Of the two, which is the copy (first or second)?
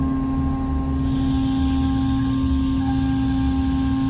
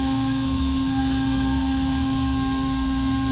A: second